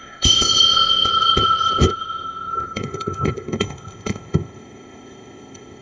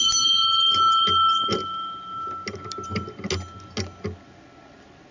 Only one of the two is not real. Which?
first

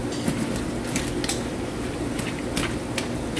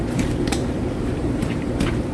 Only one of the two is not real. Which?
second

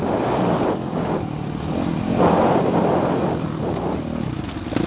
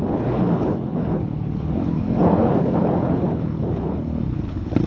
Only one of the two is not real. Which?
second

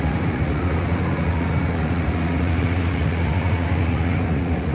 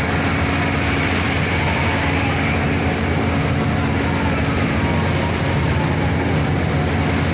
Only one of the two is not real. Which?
first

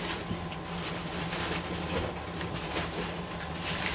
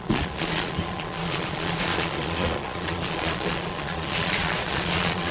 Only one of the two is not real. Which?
second